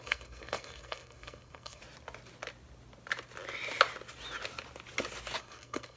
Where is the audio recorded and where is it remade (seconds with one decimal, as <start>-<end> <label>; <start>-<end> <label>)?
0.0-1.8 remade; 1.8-5.4 recorded; 5.4-6.0 remade